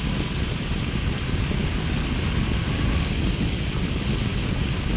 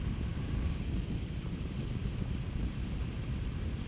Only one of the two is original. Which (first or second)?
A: first